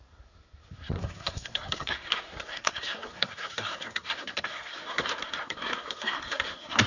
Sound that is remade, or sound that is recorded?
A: remade